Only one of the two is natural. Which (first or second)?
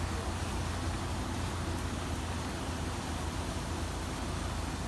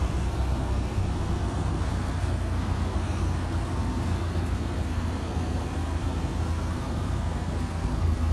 first